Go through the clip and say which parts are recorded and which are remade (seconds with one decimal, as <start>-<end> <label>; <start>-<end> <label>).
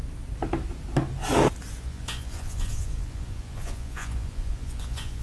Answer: 0.0-1.8 recorded; 1.8-5.2 remade